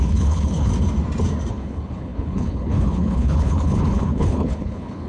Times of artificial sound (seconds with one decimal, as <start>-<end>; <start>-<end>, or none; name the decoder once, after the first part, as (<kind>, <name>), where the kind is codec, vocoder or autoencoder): 0.0-0.7 (codec, HILCodec); 1.5-5.1